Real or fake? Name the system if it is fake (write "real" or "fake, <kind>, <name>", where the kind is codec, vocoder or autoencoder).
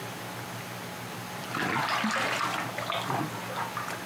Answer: real